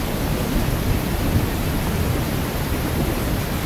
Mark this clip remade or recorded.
recorded